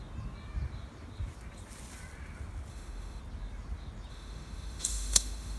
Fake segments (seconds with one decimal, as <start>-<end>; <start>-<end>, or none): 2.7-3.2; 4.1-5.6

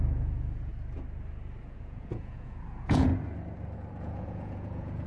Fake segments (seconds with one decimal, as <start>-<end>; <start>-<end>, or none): 0.0-0.7; 1.6-3.1; 4.0-5.1

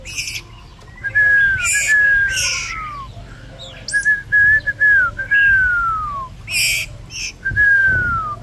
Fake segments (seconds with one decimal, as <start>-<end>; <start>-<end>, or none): none

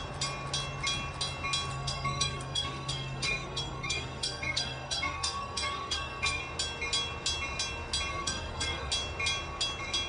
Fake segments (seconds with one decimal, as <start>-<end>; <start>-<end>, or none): 1.7-6.4; 8.1-8.9

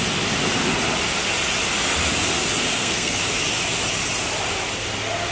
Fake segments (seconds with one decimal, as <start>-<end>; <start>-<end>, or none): 2.7-3.2